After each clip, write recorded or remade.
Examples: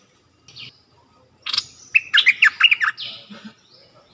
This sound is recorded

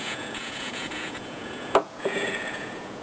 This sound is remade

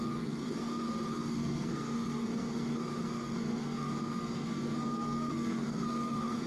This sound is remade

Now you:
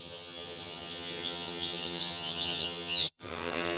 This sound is remade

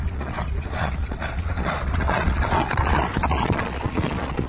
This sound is remade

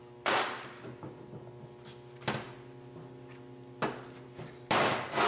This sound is recorded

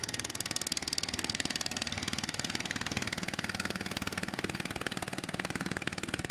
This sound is remade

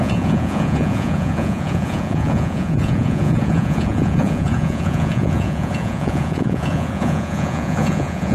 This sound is remade